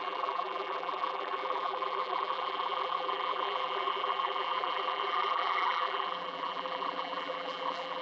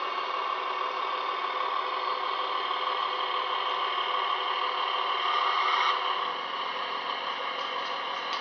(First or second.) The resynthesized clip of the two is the first